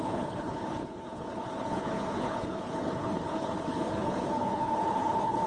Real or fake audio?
fake